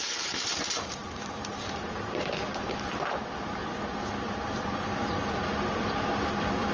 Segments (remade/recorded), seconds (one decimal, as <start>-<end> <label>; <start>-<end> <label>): 0.0-3.6 remade; 3.6-6.7 recorded